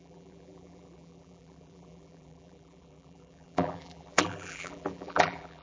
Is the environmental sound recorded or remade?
remade